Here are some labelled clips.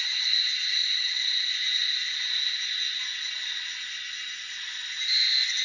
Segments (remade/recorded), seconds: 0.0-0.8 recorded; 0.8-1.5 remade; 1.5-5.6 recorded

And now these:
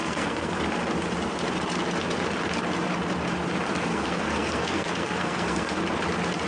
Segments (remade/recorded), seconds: 0.0-0.5 remade; 0.5-3.9 recorded; 3.9-5.8 remade; 5.8-6.5 recorded

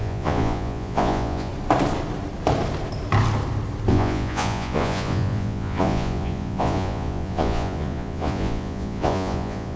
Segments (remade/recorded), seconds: 0.0-1.5 remade; 1.5-3.9 recorded; 3.9-9.8 remade